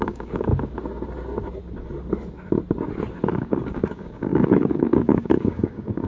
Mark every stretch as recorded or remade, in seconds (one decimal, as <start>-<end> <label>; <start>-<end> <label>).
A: 0.0-0.5 remade; 0.5-3.3 recorded; 3.3-6.1 remade